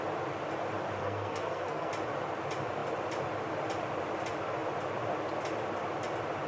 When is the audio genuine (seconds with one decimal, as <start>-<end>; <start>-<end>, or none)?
0.0-1.0; 1.9-6.5